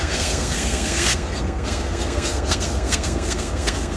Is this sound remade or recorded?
remade